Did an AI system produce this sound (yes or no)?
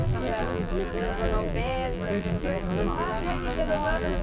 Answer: yes